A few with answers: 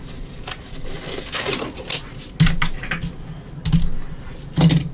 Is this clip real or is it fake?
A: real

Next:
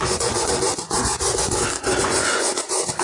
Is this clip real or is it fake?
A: fake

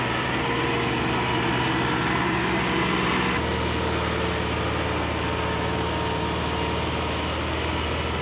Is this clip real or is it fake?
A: real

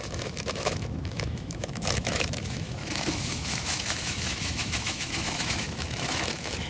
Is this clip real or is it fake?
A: fake